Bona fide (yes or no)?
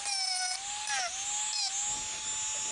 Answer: yes